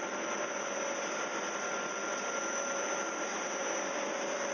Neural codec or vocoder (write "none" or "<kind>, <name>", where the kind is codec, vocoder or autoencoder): none